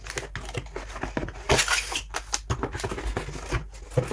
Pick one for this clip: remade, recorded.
recorded